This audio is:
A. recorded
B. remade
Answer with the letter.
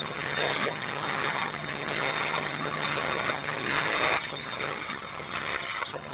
B